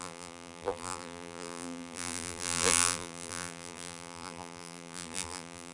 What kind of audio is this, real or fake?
fake